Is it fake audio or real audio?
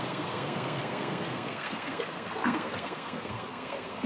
fake